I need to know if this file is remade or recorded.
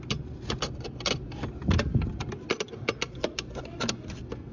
recorded